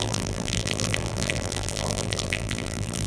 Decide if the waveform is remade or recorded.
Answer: remade